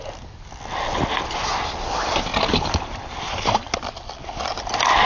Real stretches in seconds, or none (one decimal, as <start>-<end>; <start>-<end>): 0.0-5.1